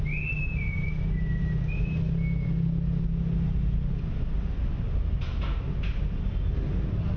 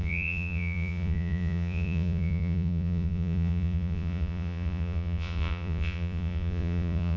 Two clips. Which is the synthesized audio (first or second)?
second